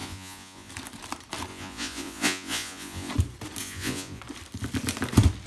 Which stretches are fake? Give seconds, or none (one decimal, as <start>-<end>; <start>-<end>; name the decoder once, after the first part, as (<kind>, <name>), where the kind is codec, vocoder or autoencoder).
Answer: 0.0-0.7 (vocoder, Vocos); 1.5-3.1; 3.6-4.2

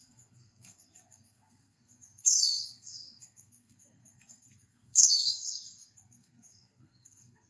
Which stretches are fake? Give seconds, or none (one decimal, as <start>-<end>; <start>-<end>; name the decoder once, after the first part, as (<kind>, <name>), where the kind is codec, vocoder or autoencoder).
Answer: 0.0-7.5 (codec, SNAC)

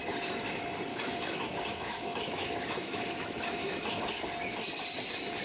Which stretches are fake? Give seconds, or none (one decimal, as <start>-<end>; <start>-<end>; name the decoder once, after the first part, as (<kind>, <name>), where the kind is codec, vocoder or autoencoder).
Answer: 0.9-4.1 (autoencoder, DAC-VAE)

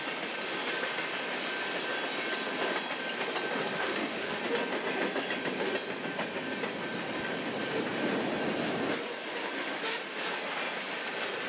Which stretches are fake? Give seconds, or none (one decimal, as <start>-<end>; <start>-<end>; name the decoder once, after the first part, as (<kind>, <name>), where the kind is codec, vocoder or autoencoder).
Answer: 3.8-4.4 (autoencoder, DAC-VAE)

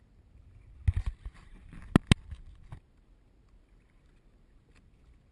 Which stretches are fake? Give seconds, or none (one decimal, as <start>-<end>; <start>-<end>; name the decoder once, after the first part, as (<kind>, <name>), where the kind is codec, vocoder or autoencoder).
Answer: none

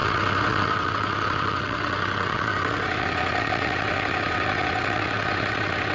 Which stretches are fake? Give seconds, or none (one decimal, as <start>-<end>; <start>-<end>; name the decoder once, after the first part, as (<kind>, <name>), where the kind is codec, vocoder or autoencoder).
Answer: 0.0-5.9 (vocoder, WaveNeXt)